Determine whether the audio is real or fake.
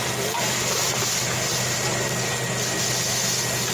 real